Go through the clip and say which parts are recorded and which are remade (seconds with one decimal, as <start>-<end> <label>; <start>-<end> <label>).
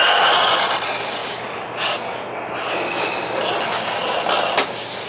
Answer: 0.0-0.7 remade; 0.7-5.1 recorded